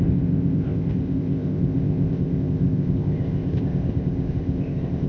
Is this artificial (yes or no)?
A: yes